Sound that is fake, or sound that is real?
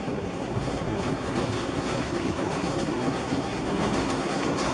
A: fake